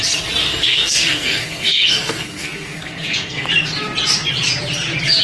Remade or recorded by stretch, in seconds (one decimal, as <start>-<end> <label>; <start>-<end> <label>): 0.0-0.4 recorded; 0.4-3.5 remade; 3.5-5.2 recorded

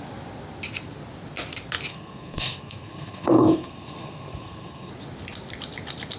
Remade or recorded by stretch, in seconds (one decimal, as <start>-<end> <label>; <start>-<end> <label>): 0.0-1.9 recorded; 1.9-4.9 remade; 4.9-6.2 recorded

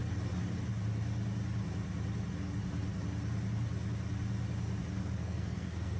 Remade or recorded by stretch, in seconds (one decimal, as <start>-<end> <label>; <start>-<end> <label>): 0.0-5.0 recorded; 5.0-6.0 remade